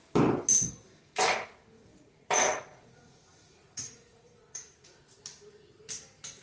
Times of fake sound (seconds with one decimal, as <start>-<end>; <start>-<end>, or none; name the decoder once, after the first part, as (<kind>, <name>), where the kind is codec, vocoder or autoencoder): 1.9-5.1 (vocoder, Vocos)